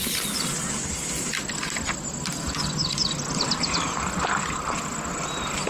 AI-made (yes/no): no